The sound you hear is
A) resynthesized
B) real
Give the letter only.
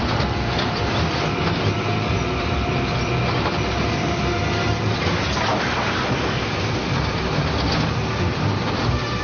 A